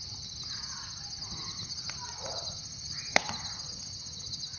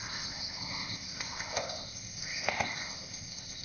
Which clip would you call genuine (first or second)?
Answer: first